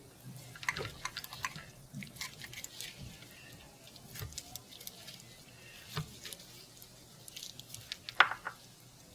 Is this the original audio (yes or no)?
yes